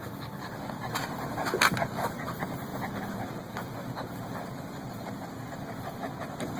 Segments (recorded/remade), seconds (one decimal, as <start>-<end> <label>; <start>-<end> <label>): 0.0-6.6 recorded